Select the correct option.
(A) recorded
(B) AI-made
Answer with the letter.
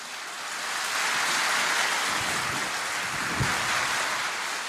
A